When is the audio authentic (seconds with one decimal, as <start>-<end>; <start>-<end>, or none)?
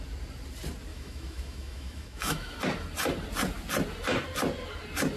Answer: 0.0-0.9; 2.6-5.2